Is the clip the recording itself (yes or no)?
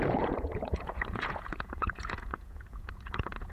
no